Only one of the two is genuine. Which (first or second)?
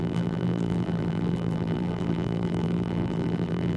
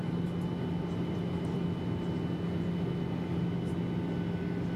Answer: second